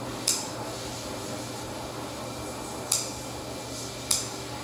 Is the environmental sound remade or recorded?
recorded